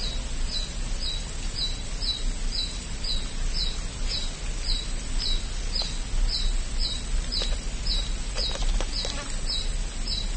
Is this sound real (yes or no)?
yes